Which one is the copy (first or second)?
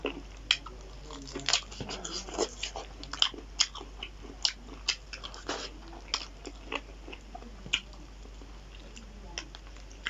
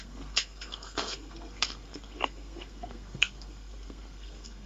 second